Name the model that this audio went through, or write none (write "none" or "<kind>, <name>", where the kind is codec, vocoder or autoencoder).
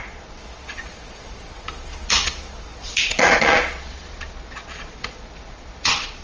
vocoder, Vocos